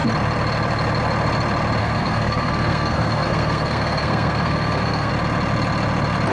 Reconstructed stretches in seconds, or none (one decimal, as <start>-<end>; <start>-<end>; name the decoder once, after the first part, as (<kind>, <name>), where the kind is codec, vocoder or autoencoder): 1.8-5.1 (codec, SNAC)